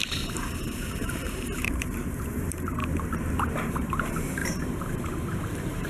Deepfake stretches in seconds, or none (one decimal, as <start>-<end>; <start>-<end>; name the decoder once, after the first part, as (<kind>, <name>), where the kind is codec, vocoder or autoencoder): 0.0-2.8 (vocoder, BigVGAN v2); 3.3-5.9